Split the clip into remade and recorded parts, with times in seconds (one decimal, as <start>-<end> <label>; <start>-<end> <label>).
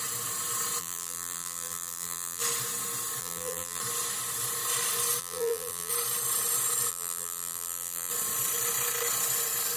0.0-0.8 recorded; 0.8-2.4 remade; 2.4-3.2 recorded; 3.2-3.8 remade; 3.8-5.2 recorded; 5.2-5.9 remade; 5.9-6.9 recorded; 6.9-8.1 remade; 8.1-9.8 recorded